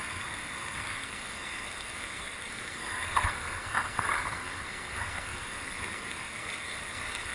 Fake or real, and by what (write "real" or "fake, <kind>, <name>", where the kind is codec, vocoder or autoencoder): fake, codec, SNAC